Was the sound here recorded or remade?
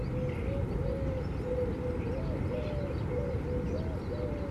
recorded